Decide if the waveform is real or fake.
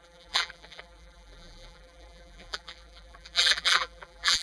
fake